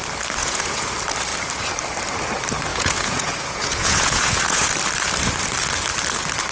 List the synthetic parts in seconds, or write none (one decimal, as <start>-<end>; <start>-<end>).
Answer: 0.4-0.9; 2.7-4.7